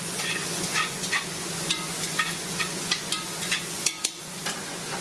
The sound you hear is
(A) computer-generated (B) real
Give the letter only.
A